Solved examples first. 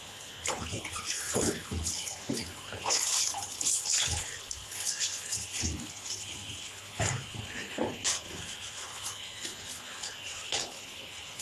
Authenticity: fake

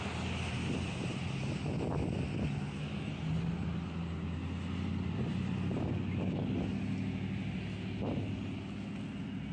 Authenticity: real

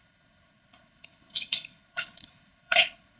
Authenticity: fake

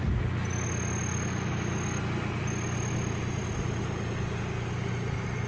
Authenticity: real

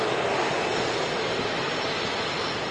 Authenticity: real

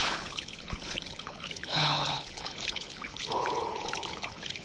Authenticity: fake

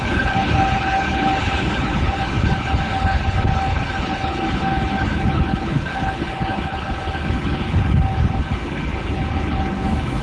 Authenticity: fake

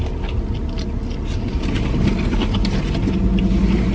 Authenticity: real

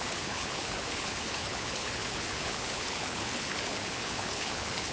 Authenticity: fake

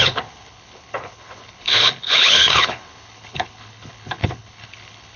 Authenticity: fake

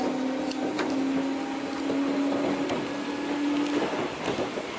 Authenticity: real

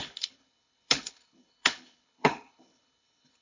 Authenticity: fake